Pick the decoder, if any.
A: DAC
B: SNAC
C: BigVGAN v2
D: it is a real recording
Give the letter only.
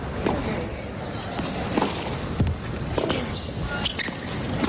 D